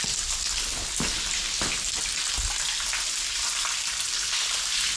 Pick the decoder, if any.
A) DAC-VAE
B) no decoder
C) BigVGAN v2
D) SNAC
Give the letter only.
B